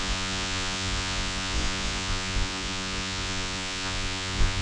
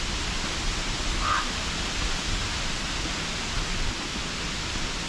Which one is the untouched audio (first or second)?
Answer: second